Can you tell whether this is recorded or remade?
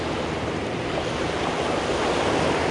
recorded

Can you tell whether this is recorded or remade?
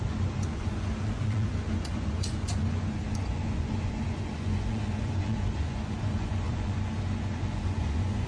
remade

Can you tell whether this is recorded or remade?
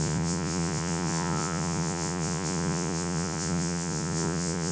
remade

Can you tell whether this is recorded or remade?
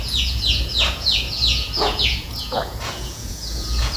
remade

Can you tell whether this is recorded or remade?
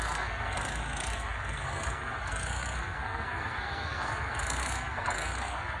remade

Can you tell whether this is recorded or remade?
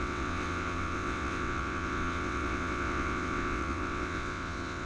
remade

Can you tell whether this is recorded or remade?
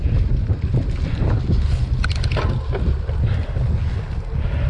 recorded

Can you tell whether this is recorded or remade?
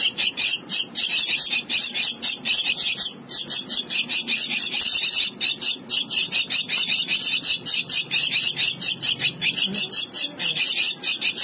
recorded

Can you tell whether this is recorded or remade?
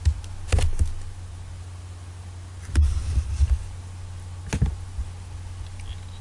recorded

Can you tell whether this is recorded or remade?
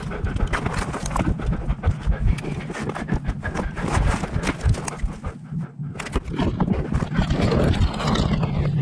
recorded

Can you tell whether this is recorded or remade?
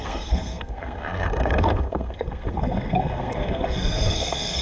remade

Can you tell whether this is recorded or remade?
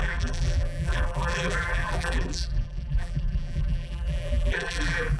remade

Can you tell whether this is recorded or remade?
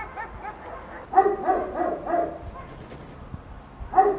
recorded